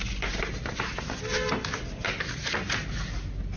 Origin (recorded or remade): recorded